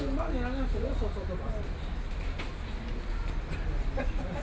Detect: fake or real real